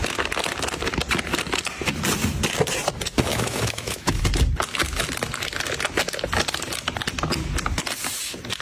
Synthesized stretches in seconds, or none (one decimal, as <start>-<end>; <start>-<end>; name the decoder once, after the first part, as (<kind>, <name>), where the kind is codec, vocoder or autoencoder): 3.3-4.2 (autoencoder, DAC-VAE)